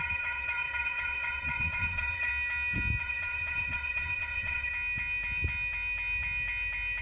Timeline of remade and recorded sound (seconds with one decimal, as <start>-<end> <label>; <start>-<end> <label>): 0.0-2.3 remade; 2.3-3.0 recorded; 3.0-4.7 remade; 4.7-7.0 recorded